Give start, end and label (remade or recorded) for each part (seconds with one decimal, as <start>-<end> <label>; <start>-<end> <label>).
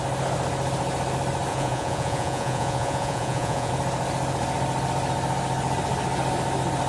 0.0-1.5 recorded; 1.5-3.7 remade; 3.7-6.9 recorded